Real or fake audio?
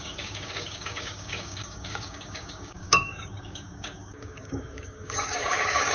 fake